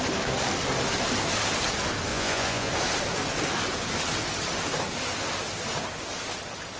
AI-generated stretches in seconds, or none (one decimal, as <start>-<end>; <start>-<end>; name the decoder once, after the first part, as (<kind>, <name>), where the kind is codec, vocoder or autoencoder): 2.1-2.7 (vocoder, Vocos)